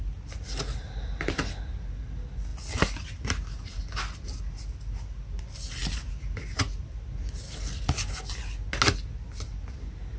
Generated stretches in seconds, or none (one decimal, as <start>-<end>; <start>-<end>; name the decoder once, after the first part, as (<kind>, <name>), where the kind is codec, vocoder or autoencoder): none